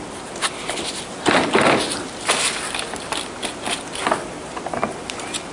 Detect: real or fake real